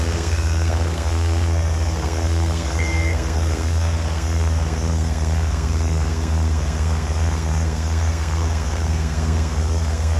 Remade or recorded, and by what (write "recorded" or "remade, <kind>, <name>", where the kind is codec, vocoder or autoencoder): remade, codec, SNAC